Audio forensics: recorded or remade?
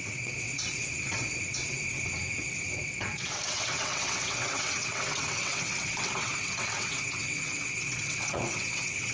remade